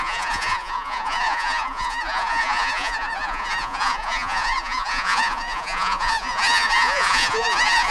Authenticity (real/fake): fake